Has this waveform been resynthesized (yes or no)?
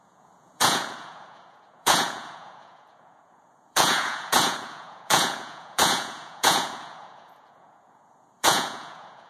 yes